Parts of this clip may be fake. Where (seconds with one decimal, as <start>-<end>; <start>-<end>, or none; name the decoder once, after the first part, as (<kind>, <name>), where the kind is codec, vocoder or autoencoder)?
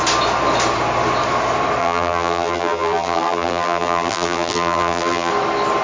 1.8-5.3 (vocoder, BigVGAN v2)